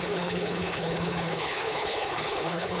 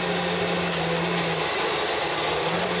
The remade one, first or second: first